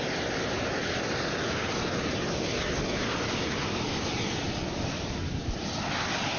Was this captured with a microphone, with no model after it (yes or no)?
no